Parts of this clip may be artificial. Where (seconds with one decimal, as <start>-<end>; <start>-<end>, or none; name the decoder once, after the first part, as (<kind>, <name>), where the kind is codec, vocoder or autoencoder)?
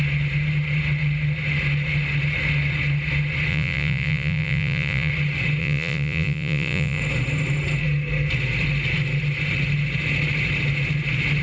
3.5-5.1 (vocoder, Vocos); 5.6-7.0